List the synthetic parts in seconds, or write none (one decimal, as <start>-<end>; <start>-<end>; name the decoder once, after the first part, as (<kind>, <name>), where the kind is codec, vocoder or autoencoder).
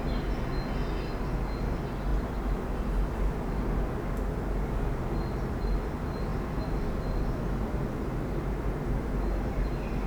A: 2.1-2.7 (vocoder, BigVGAN v2)